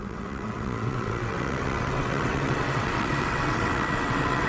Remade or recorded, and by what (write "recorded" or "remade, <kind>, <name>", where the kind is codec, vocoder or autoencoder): remade, vocoder, WaveNeXt